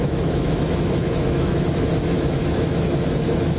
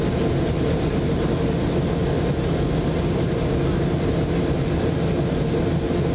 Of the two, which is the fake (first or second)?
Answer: first